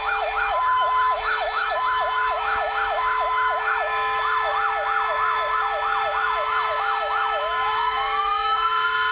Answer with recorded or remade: remade